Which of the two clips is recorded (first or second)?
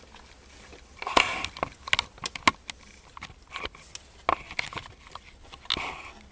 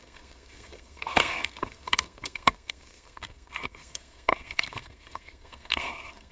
first